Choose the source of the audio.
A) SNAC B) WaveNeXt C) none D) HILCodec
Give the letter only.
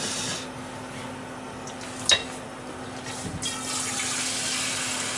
C